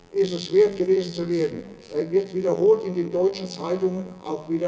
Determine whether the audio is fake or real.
fake